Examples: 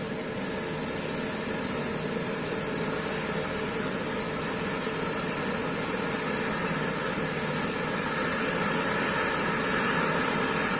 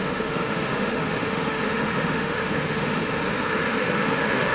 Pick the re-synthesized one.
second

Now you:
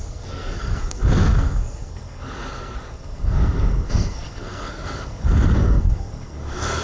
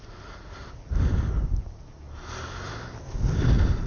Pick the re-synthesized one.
first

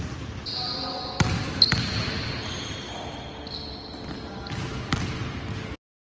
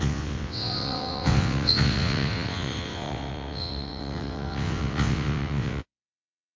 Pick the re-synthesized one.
second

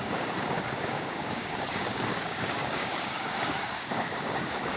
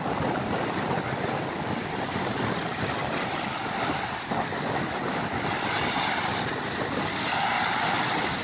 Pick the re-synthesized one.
first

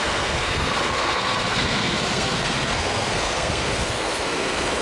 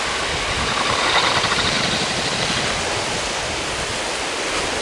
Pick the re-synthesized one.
first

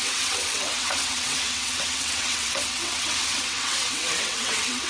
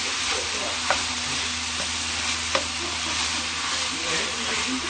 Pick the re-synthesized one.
first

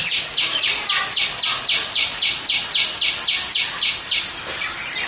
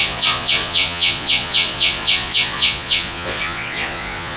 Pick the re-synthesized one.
second